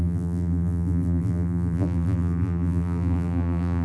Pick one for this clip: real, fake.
fake